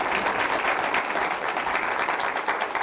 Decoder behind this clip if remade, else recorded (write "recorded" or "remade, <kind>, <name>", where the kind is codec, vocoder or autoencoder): recorded